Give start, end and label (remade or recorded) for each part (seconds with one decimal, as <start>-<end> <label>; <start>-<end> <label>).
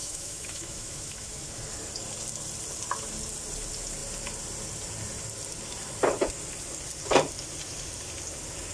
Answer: 0.0-1.5 remade; 1.5-8.7 recorded